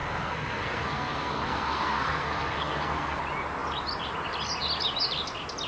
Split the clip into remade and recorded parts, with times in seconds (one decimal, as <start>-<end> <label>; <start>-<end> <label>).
0.0-3.2 remade; 3.2-5.7 recorded